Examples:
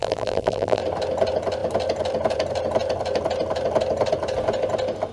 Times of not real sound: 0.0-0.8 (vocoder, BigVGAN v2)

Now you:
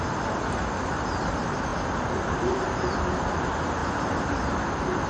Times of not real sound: 1.7-3.4 (vocoder, BigVGAN v2); 3.8-4.5

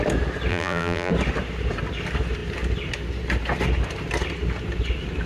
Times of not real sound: 0.5-1.1 (vocoder, BigVGAN v2)

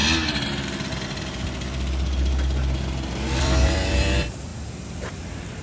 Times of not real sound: 3.4-4.5 (vocoder, BigVGAN v2)

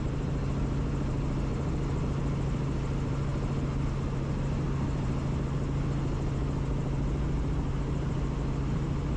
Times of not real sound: none